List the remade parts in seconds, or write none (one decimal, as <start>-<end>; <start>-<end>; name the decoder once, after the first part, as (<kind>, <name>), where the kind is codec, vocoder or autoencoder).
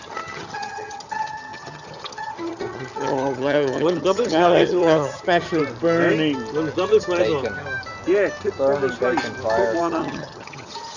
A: 0.0-5.6 (vocoder, HiFi-GAN); 9.8-11.0